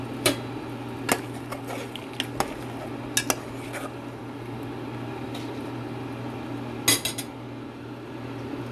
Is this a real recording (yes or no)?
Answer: yes